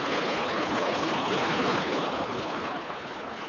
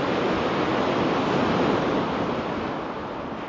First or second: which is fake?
first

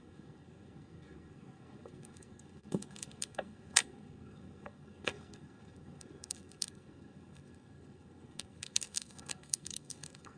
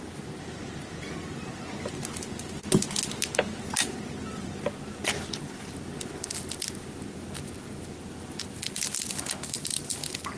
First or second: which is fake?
first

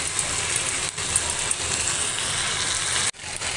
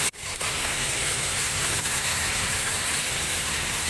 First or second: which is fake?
second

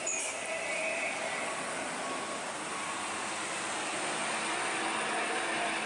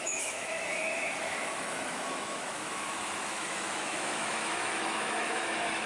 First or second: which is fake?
second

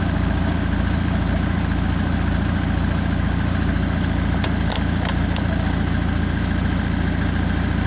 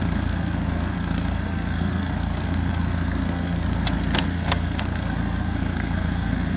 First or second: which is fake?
second